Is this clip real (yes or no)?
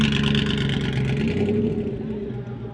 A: yes